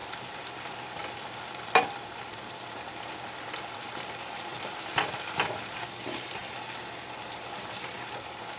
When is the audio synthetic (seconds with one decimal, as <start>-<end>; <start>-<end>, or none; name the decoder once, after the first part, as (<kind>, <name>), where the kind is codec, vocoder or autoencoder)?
0.0-6.4 (vocoder, BigVGAN v2); 7.9-8.6